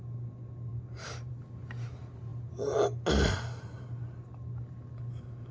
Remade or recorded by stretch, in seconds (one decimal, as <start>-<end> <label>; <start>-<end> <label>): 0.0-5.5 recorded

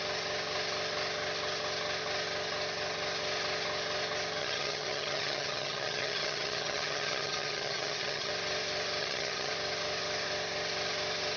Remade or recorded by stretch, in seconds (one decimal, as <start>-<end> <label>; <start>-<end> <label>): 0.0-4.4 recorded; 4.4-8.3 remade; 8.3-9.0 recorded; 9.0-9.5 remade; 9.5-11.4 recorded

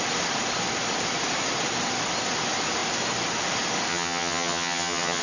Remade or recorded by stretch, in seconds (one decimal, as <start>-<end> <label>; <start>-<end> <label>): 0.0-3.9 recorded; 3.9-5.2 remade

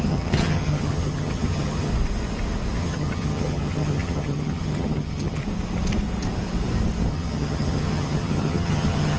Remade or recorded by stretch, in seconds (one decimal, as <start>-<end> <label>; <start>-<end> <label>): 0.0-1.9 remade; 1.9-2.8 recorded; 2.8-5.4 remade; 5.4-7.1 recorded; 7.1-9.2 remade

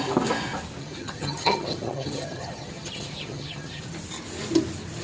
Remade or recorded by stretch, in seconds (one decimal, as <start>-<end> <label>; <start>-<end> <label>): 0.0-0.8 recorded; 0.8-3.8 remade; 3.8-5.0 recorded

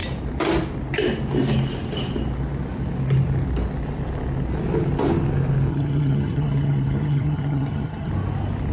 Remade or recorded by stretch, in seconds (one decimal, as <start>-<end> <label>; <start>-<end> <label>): 0.0-5.7 recorded; 5.7-8.1 remade; 8.1-8.7 recorded